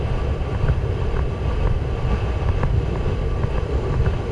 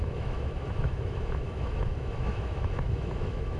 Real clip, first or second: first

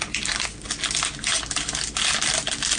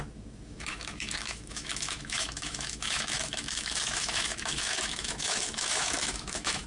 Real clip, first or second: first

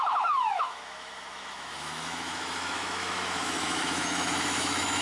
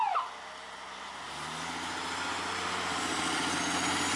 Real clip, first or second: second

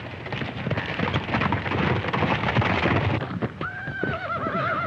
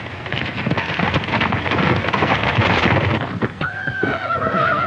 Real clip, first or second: first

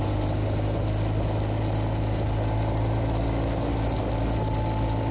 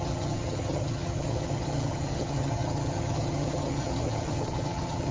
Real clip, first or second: first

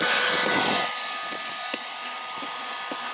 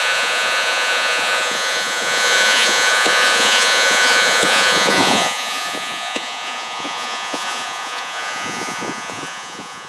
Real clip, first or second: first